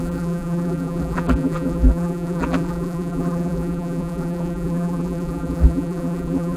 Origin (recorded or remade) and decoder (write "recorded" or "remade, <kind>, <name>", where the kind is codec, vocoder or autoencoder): remade, vocoder, BigVGAN v2